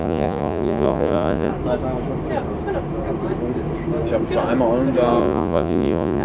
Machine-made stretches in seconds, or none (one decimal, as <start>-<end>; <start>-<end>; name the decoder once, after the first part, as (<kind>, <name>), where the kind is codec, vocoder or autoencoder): 0.0-1.5 (vocoder, Vocos); 5.2-6.2